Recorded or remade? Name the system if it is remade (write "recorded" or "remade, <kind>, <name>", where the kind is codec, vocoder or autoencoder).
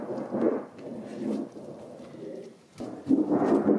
recorded